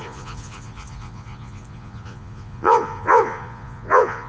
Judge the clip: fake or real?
fake